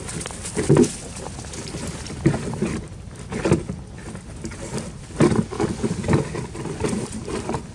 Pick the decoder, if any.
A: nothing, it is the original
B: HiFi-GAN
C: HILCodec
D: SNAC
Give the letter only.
A